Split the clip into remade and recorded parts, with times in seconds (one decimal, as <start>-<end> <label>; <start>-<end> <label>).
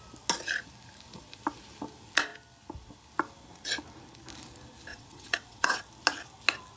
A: 0.0-4.9 recorded; 4.9-5.8 remade; 5.8-6.8 recorded